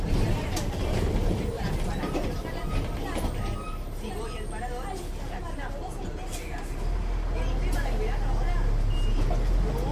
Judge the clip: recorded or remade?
recorded